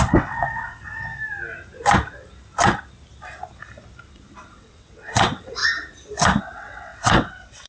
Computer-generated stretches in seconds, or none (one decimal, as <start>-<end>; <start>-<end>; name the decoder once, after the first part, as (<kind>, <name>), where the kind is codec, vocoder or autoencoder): 0.0-1.2 (vocoder, WaveNeXt); 4.6-5.6; 6.4-7.7